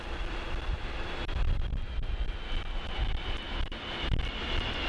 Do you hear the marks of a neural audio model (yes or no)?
no